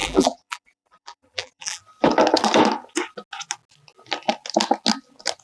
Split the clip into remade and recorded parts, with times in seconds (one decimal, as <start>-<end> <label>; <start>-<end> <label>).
0.0-1.8 remade; 1.8-5.4 recorded